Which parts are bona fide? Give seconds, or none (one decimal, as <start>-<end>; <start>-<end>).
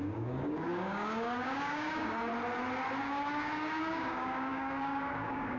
2.3-3.0